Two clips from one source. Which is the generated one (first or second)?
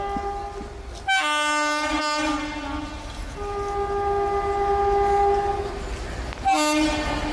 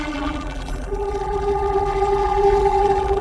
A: second